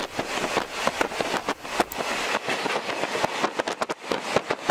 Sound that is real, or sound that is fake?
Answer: real